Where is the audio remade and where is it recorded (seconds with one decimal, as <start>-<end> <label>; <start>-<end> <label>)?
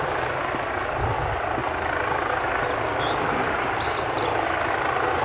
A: 0.0-5.2 recorded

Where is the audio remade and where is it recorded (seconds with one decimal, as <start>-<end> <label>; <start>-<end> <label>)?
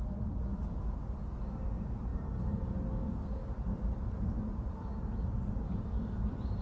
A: 0.0-4.9 remade; 4.9-5.5 recorded; 5.5-6.6 remade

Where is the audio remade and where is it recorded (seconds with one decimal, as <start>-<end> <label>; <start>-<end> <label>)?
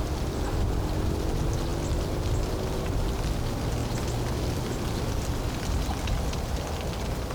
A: 0.0-7.3 recorded